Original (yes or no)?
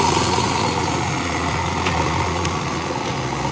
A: no